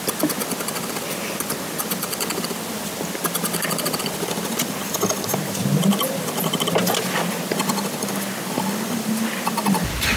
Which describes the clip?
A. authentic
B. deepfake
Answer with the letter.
A